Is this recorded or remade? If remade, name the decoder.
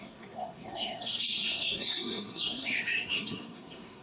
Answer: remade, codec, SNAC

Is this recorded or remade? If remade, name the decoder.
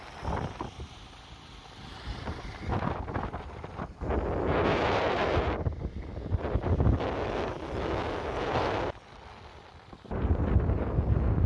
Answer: recorded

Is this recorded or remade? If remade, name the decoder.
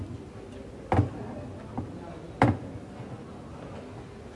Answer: recorded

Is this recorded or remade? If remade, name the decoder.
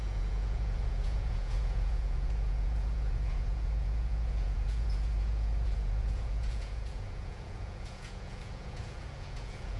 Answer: remade, vocoder, Vocos